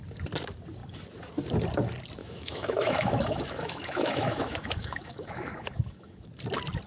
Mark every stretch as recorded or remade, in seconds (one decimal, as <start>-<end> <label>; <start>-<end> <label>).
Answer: 0.0-2.2 recorded; 2.2-6.3 remade; 6.3-6.9 recorded